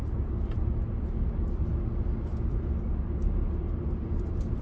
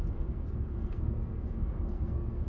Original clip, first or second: first